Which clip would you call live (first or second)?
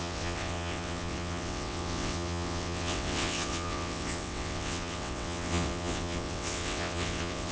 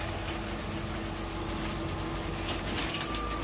second